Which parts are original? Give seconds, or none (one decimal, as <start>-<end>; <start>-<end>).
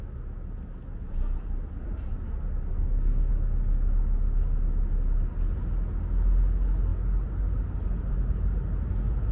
0.0-2.7; 3.3-9.3